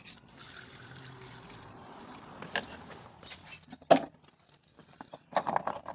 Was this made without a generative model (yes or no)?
yes